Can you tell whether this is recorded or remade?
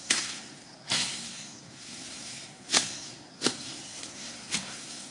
remade